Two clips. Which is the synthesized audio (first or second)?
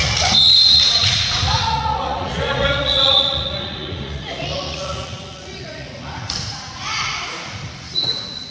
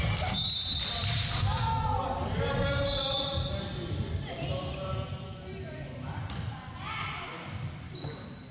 first